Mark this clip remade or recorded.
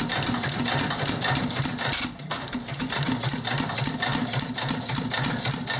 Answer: recorded